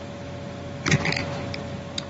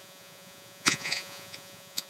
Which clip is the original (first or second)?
first